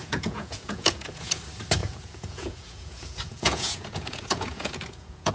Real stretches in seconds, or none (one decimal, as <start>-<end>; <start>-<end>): 1.4-1.8